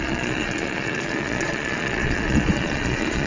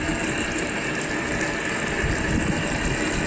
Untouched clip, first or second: second